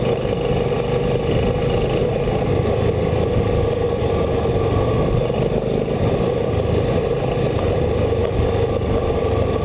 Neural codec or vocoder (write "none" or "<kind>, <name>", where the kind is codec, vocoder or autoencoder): none